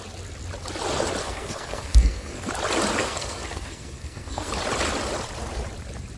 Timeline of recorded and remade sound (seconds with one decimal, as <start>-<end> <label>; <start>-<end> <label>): 0.0-1.2 recorded; 1.2-2.5 remade; 2.5-3.0 recorded; 3.0-4.5 remade; 4.5-6.2 recorded